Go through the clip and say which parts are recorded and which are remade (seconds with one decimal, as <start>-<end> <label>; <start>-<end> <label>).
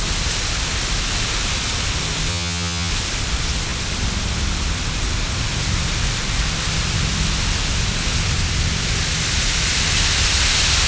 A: 0.0-2.3 recorded; 2.3-2.9 remade; 2.9-10.9 recorded